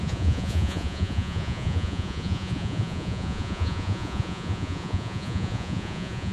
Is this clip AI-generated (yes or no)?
yes